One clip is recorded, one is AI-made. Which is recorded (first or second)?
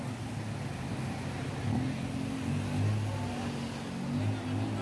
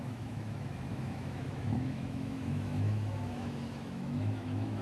first